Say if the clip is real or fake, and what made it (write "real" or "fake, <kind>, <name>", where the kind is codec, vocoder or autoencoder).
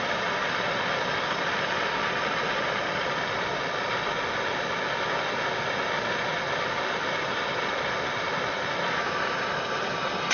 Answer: fake, vocoder, BigVGAN v2